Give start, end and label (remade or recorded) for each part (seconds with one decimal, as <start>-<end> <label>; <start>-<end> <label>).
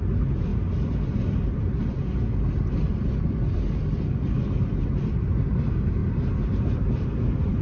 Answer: 0.0-7.6 recorded